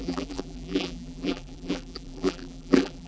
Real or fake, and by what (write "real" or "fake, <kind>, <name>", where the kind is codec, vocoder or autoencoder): fake, vocoder, BigVGAN v2